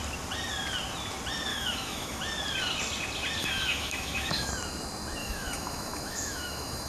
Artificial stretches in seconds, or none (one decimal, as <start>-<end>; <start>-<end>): 1.5-2.2; 3.4-4.5; 5.2-6.9